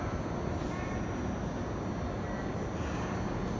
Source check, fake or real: real